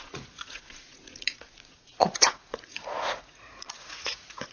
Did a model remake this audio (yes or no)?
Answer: yes